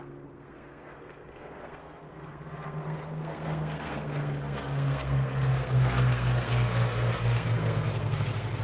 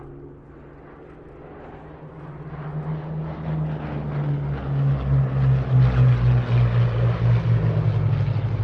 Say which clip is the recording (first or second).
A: second